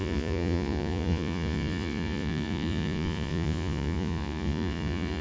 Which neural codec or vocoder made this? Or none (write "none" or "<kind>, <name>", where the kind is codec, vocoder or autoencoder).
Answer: vocoder, Vocos